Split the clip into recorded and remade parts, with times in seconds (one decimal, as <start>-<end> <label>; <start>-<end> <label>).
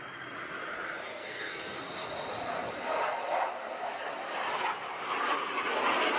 0.0-1.1 recorded; 1.1-1.8 remade; 1.8-6.2 recorded